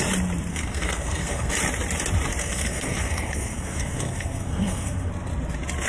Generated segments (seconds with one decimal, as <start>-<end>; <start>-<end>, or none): 0.5-1.5; 2.4-5.1